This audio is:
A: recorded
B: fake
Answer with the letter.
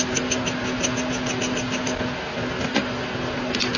A